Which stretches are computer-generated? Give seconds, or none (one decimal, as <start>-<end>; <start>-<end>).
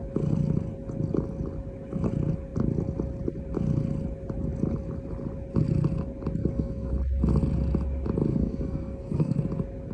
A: 6.4-6.9; 8.3-9.4